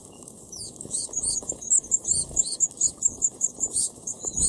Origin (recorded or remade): remade